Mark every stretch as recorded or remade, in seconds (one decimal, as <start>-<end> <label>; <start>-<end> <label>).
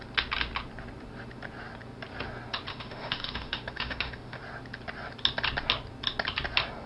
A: 0.0-2.7 recorded; 2.7-4.4 remade; 4.4-6.9 recorded